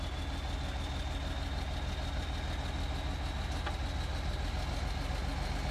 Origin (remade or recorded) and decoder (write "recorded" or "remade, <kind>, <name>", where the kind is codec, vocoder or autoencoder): recorded